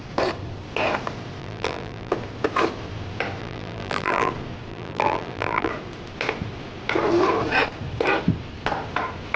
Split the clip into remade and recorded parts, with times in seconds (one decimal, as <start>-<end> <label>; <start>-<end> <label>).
0.0-1.4 recorded; 1.4-2.1 remade; 2.1-3.4 recorded; 3.4-4.3 remade; 4.3-4.7 recorded; 4.7-5.7 remade; 5.7-9.4 recorded